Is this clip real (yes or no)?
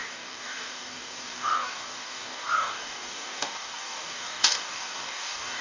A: no